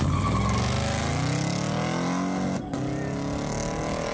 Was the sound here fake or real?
real